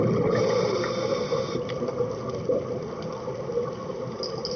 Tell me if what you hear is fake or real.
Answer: real